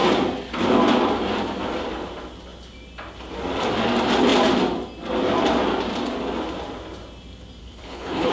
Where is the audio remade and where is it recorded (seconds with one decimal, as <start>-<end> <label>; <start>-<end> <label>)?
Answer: 0.0-7.6 recorded; 7.6-8.3 remade